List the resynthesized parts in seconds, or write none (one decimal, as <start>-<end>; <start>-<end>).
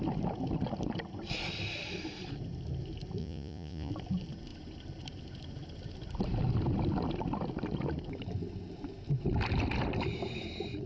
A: 3.2-3.9